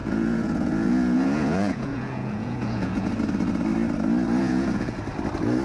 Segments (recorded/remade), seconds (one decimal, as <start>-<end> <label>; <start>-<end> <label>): 0.0-3.1 remade; 3.1-4.4 recorded; 4.4-5.0 remade; 5.0-5.6 recorded